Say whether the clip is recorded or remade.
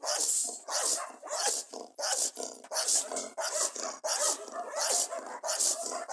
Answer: recorded